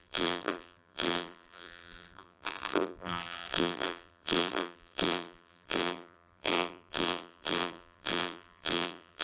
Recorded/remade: remade